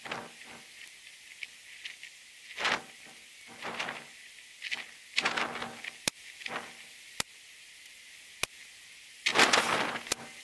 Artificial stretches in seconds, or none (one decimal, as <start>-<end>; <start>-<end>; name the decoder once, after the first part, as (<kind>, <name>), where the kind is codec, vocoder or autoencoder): none